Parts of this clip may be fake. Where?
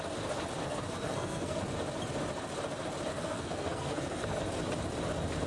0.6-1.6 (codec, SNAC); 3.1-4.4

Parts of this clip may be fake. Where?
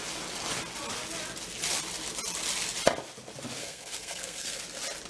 3.6-4.6 (codec, SNAC)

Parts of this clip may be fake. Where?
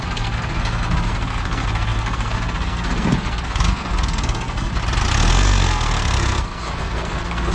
0.0-4.7 (codec, SNAC); 5.3-7.5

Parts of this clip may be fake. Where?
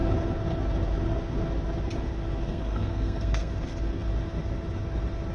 2.5-3.5 (codec, SNAC)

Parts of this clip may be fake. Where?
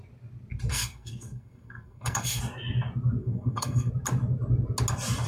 0.7-2.4 (codec, SNAC); 3.2-3.9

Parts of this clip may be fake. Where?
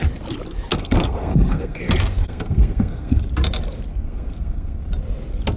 0.7-1.8 (codec, SNAC); 2.2-3.2; 3.9-4.8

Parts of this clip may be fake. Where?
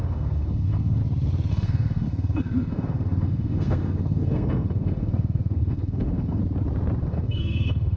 0.0-1.0 (codec, SNAC); 1.5-6.4; 7.0-8.0